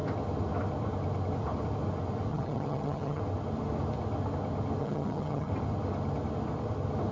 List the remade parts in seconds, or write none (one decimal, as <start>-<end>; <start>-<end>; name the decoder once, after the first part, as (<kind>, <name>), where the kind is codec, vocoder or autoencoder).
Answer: 2.3-3.2 (vocoder, HiFi-GAN); 4.8-5.5